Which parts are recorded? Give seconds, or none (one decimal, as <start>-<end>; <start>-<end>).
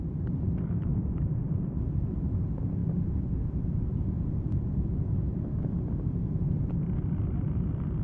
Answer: none